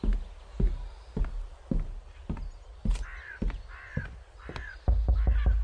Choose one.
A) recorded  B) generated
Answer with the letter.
A